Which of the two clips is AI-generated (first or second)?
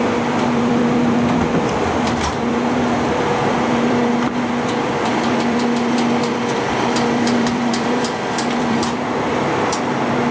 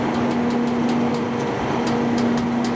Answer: first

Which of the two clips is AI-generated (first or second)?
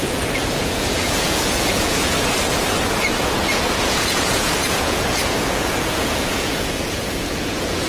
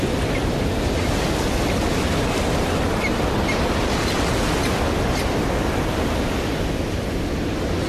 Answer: first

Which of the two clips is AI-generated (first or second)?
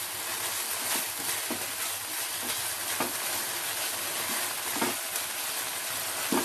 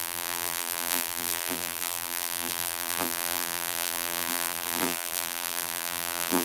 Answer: second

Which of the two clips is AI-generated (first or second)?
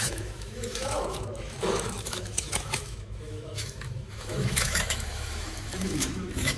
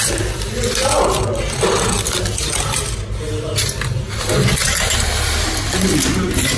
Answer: first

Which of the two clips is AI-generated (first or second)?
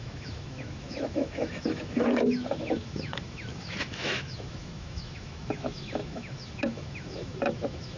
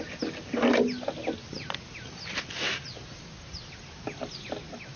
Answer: first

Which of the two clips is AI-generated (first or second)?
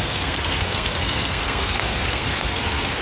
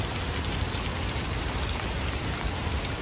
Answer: first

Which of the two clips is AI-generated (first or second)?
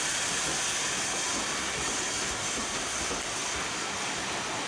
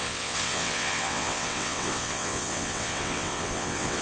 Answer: second